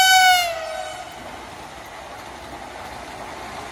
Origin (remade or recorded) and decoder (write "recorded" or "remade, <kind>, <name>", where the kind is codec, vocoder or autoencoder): recorded